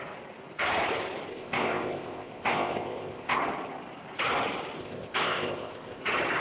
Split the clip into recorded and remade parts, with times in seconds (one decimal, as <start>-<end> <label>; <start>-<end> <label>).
0.0-1.3 recorded; 1.3-3.4 remade; 3.4-4.8 recorded; 4.8-6.0 remade; 6.0-6.4 recorded